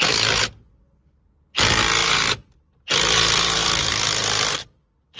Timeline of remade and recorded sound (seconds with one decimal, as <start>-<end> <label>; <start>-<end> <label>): 0.0-5.2 recorded